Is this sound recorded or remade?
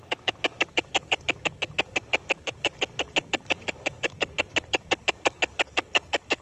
remade